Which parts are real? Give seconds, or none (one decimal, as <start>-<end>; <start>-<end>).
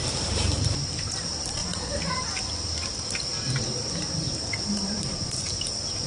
1.6-2.4; 3.3-4.1